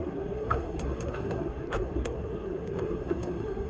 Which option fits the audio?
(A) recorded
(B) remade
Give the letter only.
B